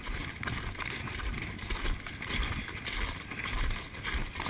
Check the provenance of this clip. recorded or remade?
recorded